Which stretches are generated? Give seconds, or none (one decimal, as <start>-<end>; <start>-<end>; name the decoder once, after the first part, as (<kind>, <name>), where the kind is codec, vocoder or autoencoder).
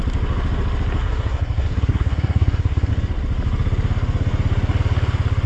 1.0-2.9 (codec, SNAC)